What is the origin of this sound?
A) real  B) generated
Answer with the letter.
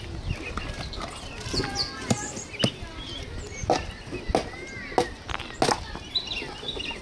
A